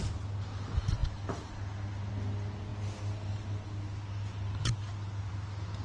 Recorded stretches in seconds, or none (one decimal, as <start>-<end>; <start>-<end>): 0.0-5.8